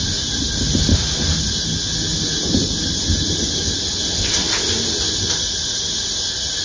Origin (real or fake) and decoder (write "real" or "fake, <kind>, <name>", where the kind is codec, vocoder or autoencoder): real